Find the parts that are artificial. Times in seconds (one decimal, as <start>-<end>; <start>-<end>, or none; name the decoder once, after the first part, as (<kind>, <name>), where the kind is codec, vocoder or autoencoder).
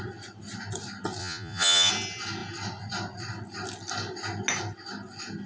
1.2-1.9 (vocoder, Vocos)